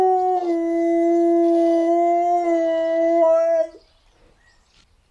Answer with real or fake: real